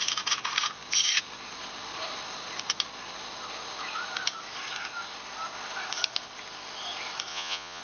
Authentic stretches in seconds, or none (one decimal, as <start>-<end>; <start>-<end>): 0.0-7.3